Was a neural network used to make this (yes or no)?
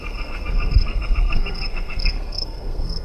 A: yes